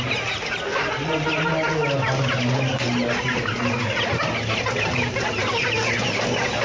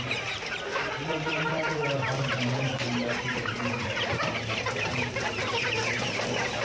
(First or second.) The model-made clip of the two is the second